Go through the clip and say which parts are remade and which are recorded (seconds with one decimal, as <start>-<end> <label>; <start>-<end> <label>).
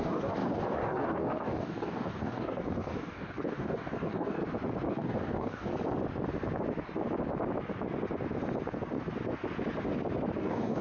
0.0-4.4 remade; 4.4-4.9 recorded; 4.9-5.7 remade; 5.7-10.4 recorded; 10.4-10.8 remade